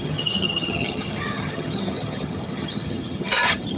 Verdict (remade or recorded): remade